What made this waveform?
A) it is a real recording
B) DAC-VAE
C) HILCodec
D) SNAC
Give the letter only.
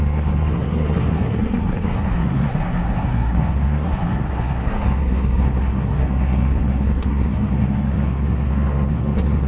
D